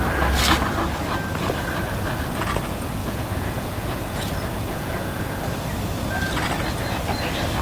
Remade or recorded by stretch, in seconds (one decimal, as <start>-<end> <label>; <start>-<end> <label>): 0.0-3.0 recorded; 3.0-5.4 remade; 5.4-7.6 recorded